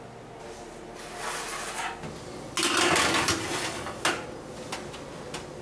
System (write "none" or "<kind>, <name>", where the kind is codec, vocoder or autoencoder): none